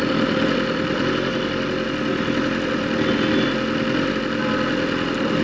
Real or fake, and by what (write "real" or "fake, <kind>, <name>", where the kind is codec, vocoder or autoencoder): real